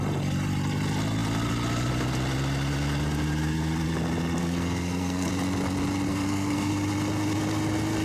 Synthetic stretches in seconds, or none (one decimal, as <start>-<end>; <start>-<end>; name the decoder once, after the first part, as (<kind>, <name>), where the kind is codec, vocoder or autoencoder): 4.4-5.3 (codec, SNAC); 6.1-6.7